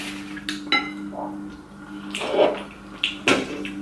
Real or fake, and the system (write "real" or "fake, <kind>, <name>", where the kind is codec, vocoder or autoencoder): real